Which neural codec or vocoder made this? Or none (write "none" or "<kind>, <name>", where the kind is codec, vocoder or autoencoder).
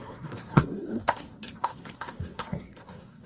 codec, SNAC